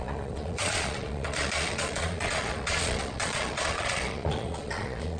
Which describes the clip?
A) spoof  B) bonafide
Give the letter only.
A